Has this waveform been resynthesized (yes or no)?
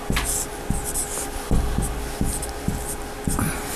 no